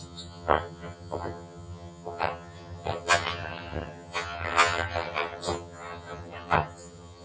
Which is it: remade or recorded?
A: remade